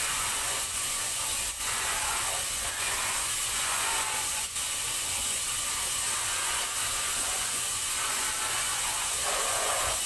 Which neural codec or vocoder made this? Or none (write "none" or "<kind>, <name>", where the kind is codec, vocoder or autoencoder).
vocoder, Vocos